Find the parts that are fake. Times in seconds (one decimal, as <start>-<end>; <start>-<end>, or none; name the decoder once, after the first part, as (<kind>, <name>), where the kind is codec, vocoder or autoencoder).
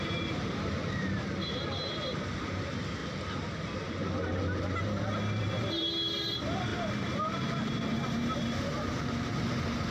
0.0-3.0 (vocoder, BigVGAN v2); 5.4-9.9